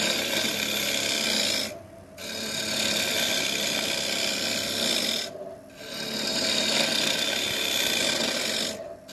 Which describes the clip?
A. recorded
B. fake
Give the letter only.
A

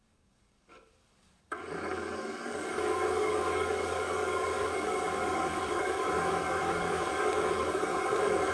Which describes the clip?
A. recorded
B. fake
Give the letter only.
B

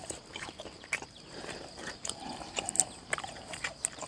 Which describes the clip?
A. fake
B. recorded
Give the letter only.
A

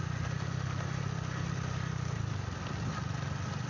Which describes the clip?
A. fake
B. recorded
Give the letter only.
B